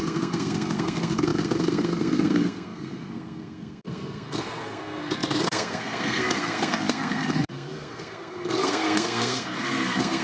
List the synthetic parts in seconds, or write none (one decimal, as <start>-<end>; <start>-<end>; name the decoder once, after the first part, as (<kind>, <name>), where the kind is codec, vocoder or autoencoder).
0.0-10.2 (codec, SNAC)